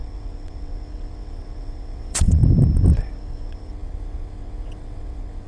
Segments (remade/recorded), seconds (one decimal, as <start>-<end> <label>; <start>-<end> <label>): 0.0-2.4 remade; 2.4-3.1 recorded; 3.1-5.5 remade